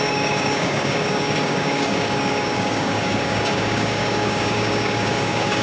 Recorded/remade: remade